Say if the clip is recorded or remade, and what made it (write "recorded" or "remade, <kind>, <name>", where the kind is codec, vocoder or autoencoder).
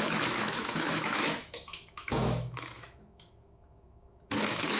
remade, autoencoder, DAC-VAE